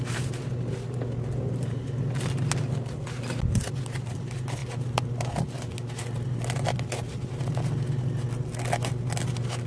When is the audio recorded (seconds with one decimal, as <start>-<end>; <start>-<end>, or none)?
0.0-4.6; 5.3-9.7